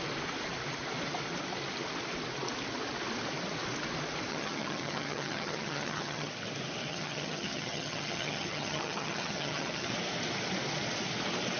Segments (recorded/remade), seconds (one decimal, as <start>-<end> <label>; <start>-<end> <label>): 0.0-4.3 recorded; 4.3-6.3 remade; 6.3-6.9 recorded; 6.9-9.9 remade; 9.9-11.6 recorded